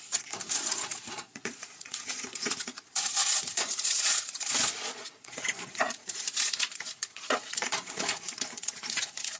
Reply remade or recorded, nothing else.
remade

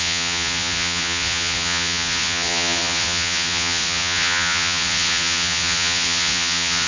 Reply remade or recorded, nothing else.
remade